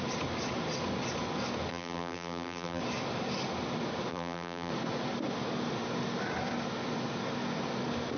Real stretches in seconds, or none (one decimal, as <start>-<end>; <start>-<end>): 0.0-1.7; 2.8-4.1; 4.7-8.2